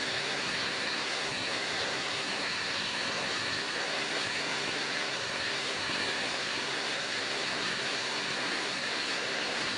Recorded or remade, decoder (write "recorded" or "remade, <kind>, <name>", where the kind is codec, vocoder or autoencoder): remade, codec, SNAC